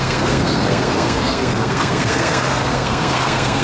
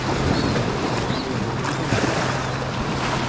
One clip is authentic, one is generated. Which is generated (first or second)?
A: first